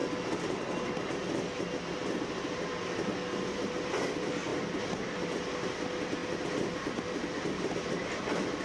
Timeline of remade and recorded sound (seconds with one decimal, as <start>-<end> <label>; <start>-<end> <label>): 0.0-8.6 recorded